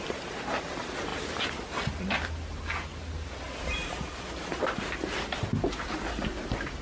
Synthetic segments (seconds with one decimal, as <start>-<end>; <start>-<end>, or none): none